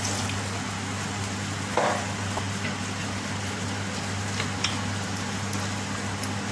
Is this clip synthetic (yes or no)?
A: no